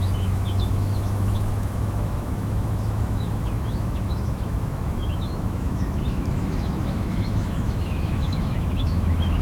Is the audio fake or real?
fake